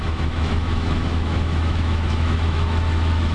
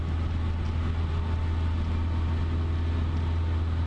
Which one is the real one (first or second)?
second